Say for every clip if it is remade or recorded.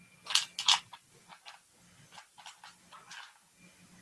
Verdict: recorded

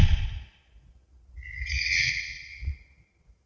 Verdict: remade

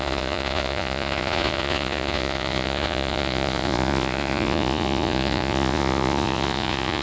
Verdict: remade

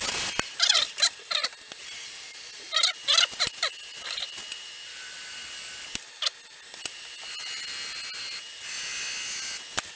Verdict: recorded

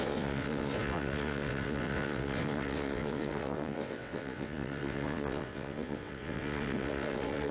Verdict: remade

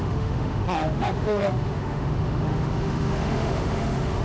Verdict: remade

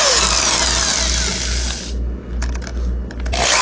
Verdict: recorded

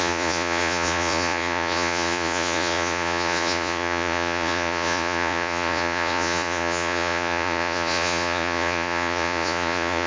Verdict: remade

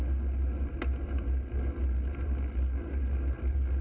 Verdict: recorded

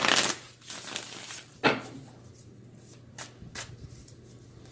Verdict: recorded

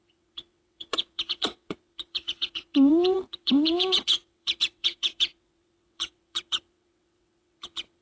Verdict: remade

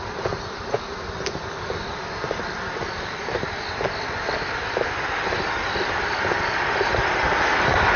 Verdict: recorded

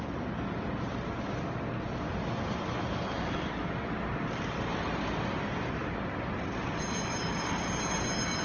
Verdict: recorded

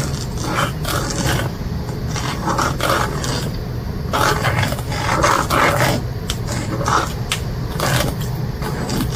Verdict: recorded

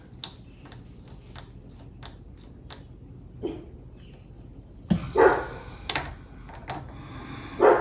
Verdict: recorded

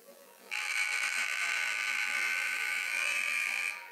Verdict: remade